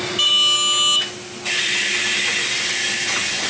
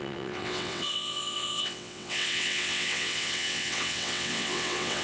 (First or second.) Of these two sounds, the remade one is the second